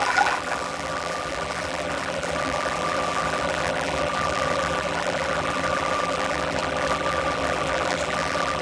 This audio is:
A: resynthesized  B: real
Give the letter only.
A